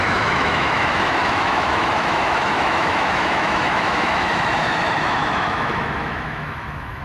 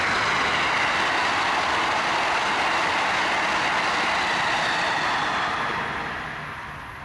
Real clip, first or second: second